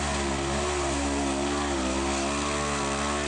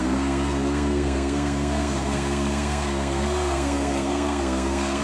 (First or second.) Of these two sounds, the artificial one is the second